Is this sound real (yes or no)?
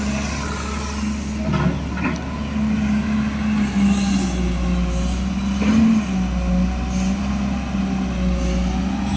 yes